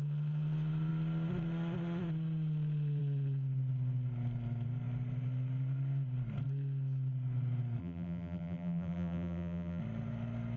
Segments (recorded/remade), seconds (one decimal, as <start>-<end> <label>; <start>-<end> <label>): 0.0-7.8 recorded; 7.8-9.8 remade; 9.8-10.6 recorded